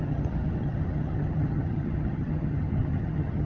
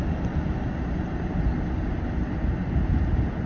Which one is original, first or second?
second